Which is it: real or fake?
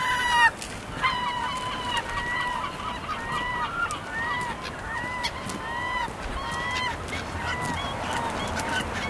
real